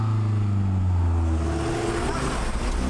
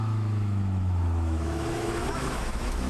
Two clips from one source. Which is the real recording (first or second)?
first